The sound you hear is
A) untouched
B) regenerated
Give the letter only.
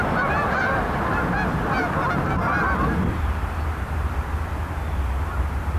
A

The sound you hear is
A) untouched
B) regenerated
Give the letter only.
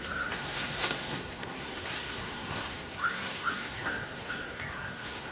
B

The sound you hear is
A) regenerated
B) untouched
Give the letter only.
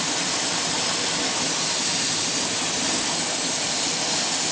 B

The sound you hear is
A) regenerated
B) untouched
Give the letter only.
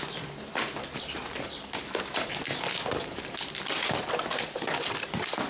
B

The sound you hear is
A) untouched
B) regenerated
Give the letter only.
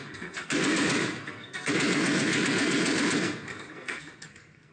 B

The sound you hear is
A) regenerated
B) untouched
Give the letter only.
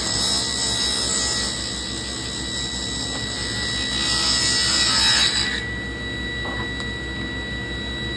B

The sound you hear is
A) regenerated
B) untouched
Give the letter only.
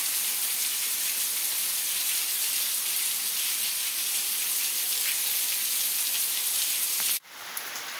B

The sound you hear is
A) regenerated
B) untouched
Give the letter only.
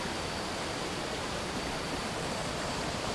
B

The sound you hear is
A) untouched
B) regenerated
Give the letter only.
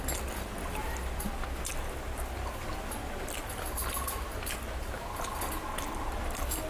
A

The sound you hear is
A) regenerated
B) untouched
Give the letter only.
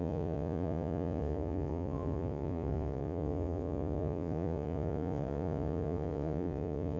A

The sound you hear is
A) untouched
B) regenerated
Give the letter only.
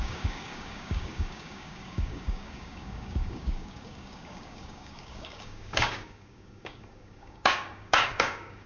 B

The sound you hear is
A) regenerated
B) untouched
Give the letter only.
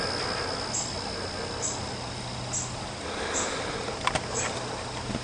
B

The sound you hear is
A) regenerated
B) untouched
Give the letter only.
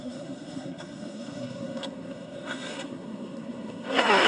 A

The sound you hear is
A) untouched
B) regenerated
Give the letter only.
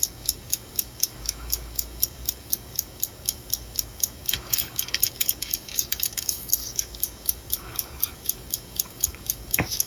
B